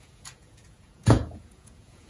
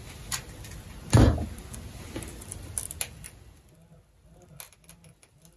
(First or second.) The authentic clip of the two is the second